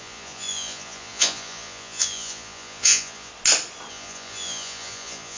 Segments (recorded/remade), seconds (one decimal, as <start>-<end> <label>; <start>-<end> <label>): 0.0-3.3 remade; 3.3-3.9 recorded; 3.9-5.4 remade